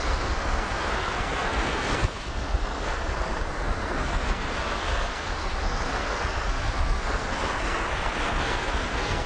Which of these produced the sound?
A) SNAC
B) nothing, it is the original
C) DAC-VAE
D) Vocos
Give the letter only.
A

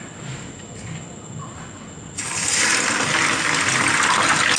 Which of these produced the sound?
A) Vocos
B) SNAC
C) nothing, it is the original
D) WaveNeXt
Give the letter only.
C